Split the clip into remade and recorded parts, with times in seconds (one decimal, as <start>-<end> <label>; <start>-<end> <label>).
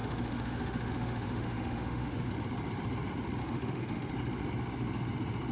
0.0-2.3 remade; 2.3-3.4 recorded; 3.4-4.1 remade; 4.1-5.5 recorded